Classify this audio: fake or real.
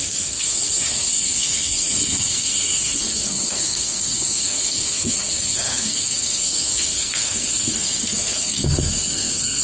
fake